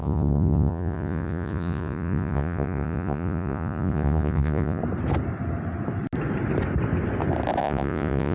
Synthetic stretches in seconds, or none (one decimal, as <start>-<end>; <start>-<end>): 0.0-4.8; 7.6-8.3